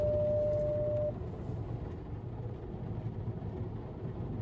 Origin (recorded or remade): recorded